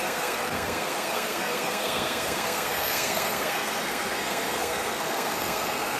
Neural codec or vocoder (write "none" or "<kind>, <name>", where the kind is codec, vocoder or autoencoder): codec, SNAC